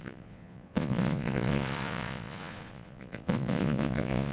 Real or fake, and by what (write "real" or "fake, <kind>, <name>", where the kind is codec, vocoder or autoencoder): fake, vocoder, Vocos